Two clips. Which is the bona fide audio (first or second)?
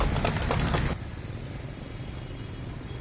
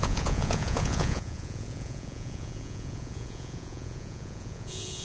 first